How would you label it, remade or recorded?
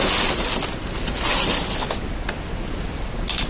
recorded